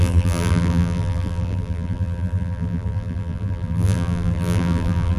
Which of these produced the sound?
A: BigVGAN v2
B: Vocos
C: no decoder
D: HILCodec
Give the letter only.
A